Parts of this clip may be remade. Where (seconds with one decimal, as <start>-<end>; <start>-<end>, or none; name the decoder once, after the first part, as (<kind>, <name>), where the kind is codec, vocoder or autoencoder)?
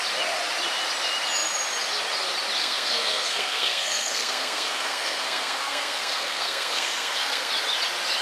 2.6-7.5 (codec, SNAC)